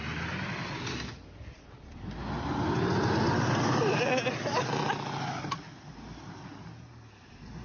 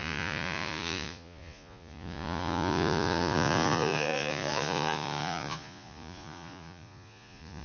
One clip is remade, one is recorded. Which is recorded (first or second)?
first